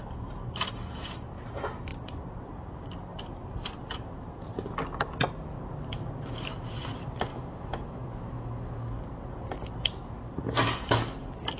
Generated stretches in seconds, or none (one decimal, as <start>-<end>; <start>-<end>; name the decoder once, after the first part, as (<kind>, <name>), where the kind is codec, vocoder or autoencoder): 7.3-8.9 (autoencoder, DAC-VAE)